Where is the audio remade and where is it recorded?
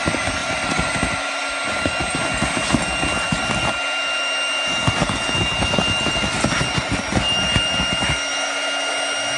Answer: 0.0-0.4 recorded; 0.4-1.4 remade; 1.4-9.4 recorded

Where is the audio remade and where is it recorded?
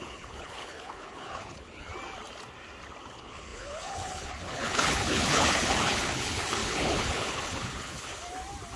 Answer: 0.0-1.9 remade; 1.9-3.1 recorded; 3.1-8.1 remade; 8.1-8.8 recorded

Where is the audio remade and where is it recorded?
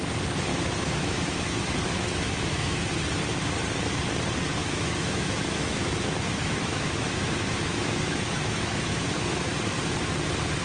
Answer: 0.0-0.5 recorded; 0.5-2.8 remade; 2.8-4.6 recorded; 4.6-9.1 remade; 9.1-10.6 recorded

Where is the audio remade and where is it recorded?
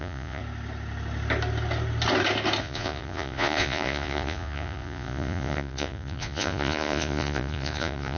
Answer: 0.0-0.4 remade; 0.4-2.6 recorded; 2.6-8.2 remade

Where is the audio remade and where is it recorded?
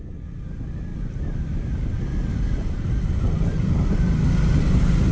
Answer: 0.0-0.9 recorded; 0.9-4.0 remade; 4.0-5.1 recorded